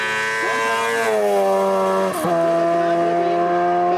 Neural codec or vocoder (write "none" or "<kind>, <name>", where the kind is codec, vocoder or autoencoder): none